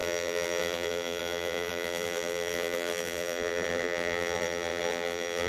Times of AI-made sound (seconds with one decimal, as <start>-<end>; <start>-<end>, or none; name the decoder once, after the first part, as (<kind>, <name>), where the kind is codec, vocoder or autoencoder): 0.0-5.5 (vocoder, BigVGAN v2)